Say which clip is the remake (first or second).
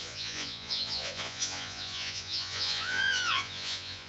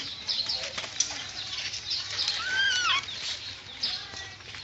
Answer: first